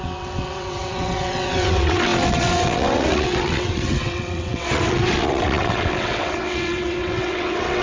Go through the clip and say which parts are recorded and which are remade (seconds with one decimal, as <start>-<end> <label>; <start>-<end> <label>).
0.0-7.8 remade